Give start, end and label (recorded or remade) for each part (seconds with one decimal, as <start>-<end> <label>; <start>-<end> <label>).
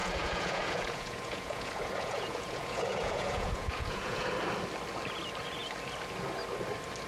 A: 0.0-4.3 remade; 4.3-7.1 recorded